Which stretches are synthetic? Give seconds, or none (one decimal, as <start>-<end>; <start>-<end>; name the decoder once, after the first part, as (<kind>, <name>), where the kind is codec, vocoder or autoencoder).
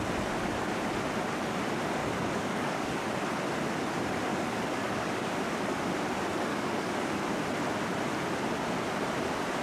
2.0-3.1 (codec, DAC); 4.3-5.3; 6.5-7.1